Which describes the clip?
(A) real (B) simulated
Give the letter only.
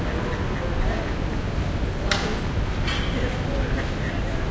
A